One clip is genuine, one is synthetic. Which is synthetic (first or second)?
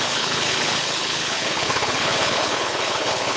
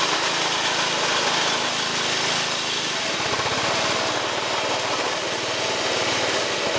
first